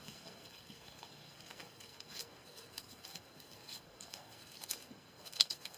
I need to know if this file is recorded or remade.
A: remade